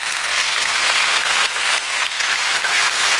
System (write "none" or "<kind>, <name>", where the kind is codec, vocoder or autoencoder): codec, SNAC